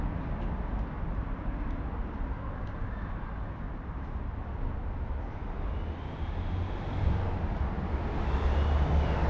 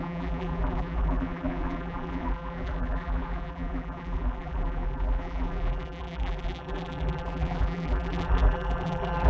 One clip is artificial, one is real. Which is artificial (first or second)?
second